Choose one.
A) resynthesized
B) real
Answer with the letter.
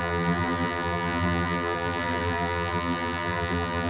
A